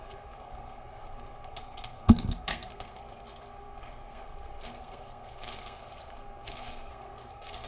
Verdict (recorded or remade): remade